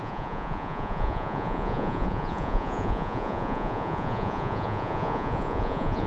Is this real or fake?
fake